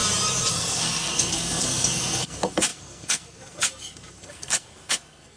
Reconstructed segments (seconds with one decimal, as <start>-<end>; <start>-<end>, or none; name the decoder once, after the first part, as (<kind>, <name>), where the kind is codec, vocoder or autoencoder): 0.5-5.4 (codec, SNAC)